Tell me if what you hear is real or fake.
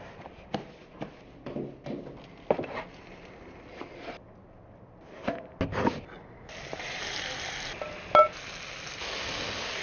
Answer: real